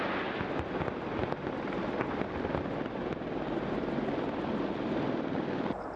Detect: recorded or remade recorded